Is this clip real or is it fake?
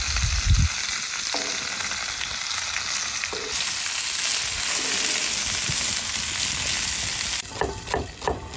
real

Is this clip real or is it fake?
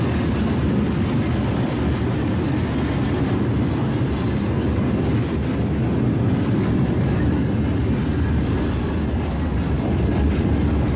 real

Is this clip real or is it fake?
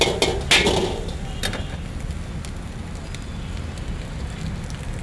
real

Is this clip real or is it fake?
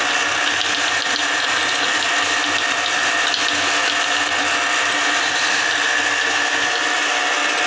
real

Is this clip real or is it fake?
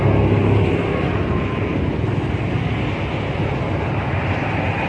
real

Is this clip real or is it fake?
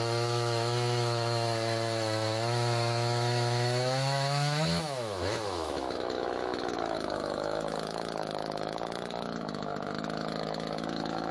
fake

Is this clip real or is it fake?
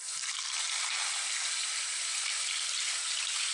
real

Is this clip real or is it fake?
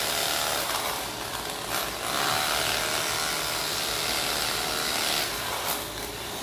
real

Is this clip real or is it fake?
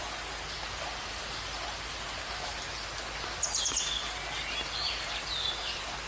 real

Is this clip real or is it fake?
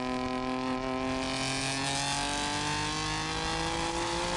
real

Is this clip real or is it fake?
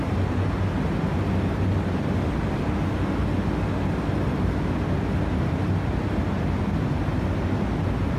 real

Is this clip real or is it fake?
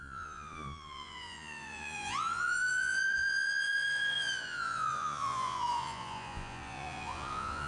fake